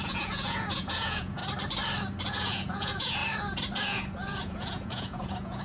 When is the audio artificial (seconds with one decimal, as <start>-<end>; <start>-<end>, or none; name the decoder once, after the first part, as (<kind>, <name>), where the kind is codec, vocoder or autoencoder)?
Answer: 0.0-1.4 (vocoder, Vocos); 2.3-3.2; 3.8-5.6